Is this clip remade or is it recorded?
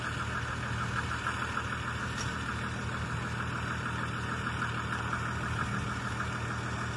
recorded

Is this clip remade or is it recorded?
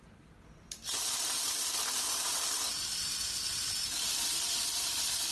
remade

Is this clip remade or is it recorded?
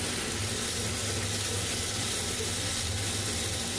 recorded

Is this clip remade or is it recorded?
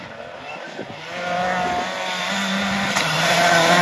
recorded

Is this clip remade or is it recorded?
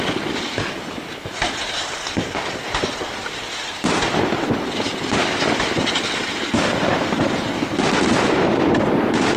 recorded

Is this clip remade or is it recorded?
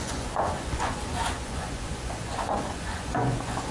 remade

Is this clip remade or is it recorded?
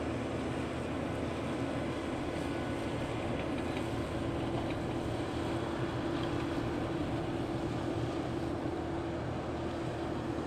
recorded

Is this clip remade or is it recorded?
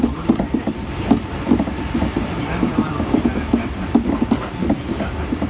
remade